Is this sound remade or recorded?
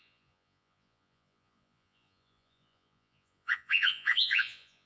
remade